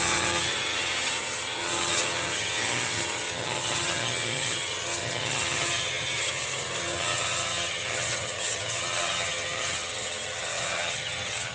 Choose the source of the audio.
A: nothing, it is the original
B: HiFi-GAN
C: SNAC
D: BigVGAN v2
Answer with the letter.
B